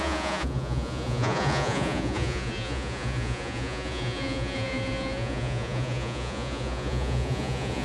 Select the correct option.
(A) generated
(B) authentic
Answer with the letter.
A